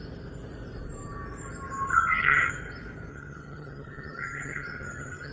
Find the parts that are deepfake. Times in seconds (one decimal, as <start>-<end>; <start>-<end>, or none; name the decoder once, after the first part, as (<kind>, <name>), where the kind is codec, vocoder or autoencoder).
1.9-2.5 (vocoder, HiFi-GAN); 3.1-5.3